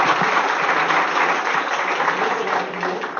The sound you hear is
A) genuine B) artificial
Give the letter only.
A